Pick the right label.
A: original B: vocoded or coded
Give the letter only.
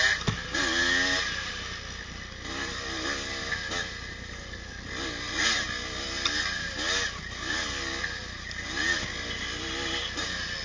A